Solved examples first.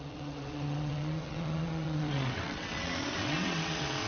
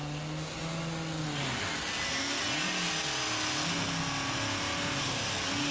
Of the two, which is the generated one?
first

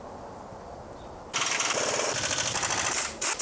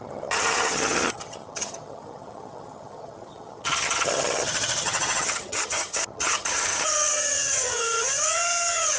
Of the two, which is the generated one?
second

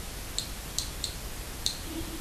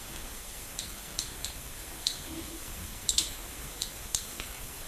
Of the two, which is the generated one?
second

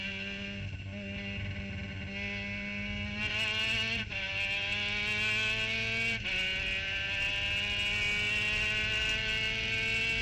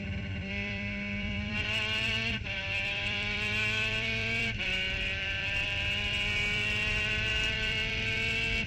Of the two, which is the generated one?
second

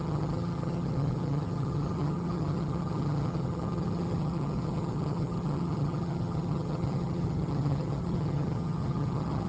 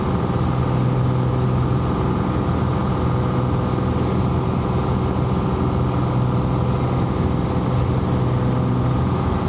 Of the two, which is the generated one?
first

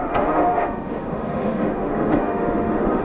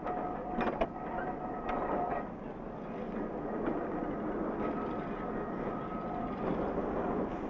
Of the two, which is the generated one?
first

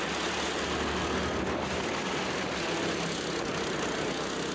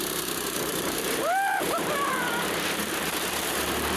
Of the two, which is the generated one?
second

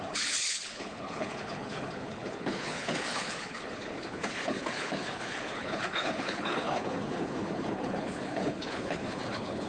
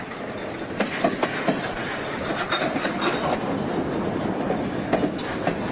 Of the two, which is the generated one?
first